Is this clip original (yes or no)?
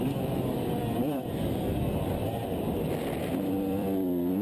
no